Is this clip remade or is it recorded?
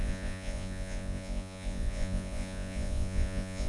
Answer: remade